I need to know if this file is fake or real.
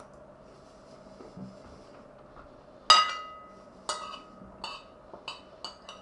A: real